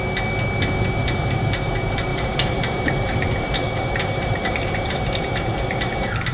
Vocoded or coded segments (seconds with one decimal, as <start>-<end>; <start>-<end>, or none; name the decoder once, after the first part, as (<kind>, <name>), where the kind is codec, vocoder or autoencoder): 1.0-1.7 (vocoder, BigVGAN v2); 2.1-6.3